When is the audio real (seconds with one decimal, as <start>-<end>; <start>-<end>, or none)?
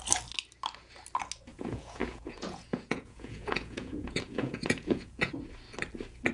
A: 0.0-1.5; 5.3-6.3